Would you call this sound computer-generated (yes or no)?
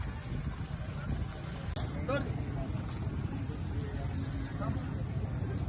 no